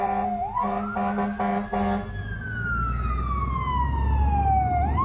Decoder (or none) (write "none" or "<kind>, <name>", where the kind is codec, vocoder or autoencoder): none